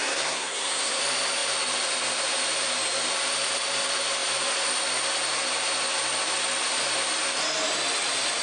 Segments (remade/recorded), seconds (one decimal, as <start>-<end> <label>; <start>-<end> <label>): 0.0-1.0 remade; 1.0-8.4 recorded